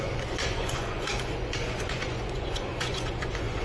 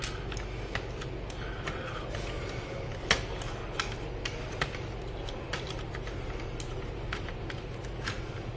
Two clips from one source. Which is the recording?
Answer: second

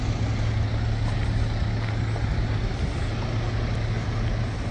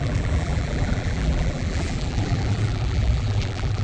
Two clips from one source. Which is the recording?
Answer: first